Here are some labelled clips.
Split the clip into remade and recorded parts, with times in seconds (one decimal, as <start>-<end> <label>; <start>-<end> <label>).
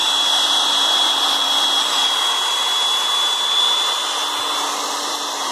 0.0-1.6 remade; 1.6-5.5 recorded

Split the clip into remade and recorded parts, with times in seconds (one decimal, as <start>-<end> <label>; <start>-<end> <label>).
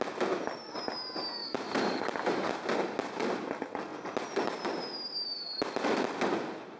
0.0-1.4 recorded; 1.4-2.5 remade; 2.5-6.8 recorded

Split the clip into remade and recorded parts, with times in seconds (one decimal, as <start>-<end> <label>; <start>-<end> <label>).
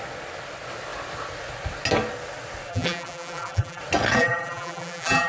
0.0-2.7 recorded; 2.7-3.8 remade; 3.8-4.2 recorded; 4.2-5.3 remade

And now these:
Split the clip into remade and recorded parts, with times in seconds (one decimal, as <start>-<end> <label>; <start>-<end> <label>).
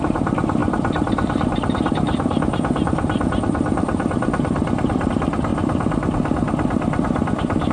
0.0-5.5 remade; 5.5-7.7 recorded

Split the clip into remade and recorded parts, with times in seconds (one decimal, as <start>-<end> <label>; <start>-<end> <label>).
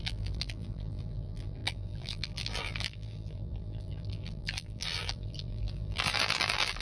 0.0-6.8 remade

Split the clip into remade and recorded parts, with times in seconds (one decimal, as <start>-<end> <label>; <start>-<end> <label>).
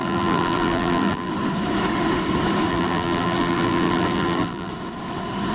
0.0-1.3 remade; 1.3-2.7 recorded; 2.7-4.7 remade; 4.7-5.5 recorded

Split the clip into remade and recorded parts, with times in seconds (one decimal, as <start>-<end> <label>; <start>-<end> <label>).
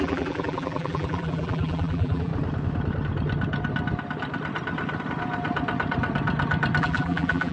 0.0-2.3 remade; 2.3-6.8 recorded; 6.8-7.5 remade